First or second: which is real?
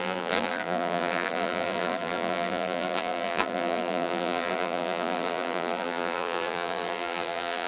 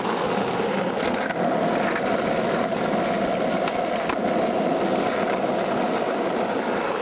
second